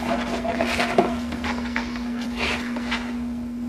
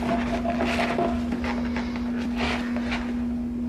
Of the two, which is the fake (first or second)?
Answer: first